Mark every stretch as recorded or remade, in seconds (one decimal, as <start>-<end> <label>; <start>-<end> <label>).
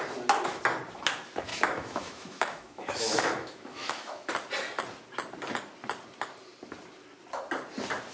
0.0-1.5 recorded; 1.5-4.3 remade; 4.3-8.1 recorded